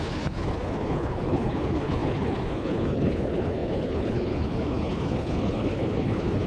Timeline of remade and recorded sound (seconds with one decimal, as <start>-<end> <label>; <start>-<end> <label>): 0.0-6.5 remade

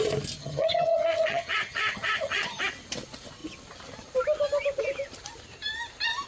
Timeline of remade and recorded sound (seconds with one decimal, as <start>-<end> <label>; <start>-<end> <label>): 0.0-0.4 recorded; 0.4-2.6 remade; 2.6-6.3 recorded

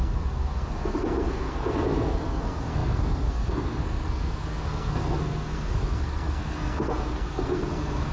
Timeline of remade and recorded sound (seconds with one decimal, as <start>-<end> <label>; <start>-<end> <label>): 0.0-8.1 remade

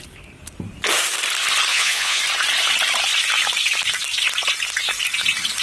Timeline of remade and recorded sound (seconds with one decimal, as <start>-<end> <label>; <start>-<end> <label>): 0.0-1.7 recorded; 1.7-2.2 remade; 2.2-5.6 recorded

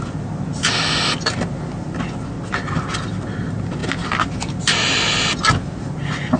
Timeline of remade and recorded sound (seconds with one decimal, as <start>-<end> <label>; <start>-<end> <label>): 0.0-6.4 recorded

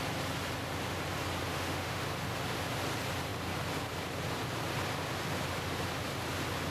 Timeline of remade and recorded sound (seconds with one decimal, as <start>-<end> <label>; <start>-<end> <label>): 0.0-1.5 recorded; 1.5-2.0 remade; 2.0-6.7 recorded

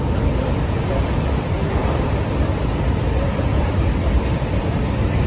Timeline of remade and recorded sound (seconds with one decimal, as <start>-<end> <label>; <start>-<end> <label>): 0.0-3.3 recorded; 3.3-5.3 remade